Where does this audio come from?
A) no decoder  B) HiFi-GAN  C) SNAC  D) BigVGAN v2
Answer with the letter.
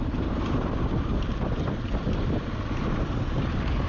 A